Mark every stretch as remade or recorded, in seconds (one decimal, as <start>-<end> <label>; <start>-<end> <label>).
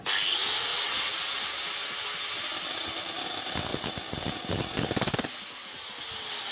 0.0-6.5 recorded